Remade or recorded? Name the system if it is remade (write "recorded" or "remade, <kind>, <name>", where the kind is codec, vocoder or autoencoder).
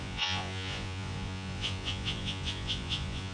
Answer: remade, vocoder, Vocos